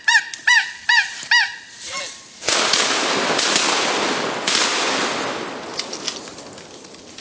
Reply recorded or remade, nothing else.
recorded